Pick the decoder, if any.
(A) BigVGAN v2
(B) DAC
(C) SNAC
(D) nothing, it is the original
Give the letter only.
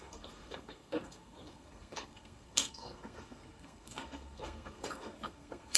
C